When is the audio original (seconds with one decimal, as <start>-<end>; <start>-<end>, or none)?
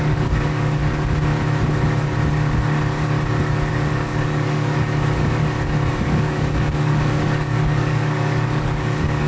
0.8-3.7; 5.4-5.9